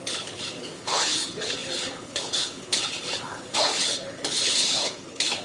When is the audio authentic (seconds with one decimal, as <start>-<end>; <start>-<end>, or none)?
none